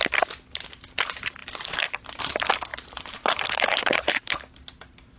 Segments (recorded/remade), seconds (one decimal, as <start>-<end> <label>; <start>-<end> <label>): 0.0-5.2 recorded